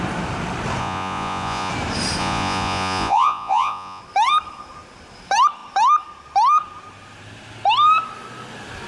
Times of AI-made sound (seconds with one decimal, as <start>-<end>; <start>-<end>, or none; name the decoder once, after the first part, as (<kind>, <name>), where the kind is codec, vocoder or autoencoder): 0.8-1.7 (vocoder, Vocos); 2.2-4.0